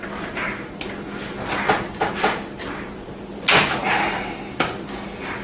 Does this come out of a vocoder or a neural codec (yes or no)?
no